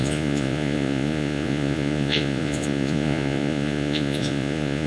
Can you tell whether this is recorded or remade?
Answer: remade